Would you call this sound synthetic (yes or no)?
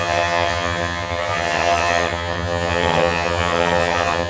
yes